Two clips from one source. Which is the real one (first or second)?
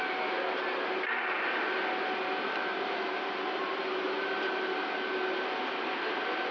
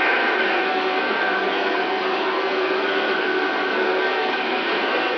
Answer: first